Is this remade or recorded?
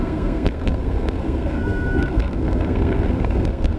remade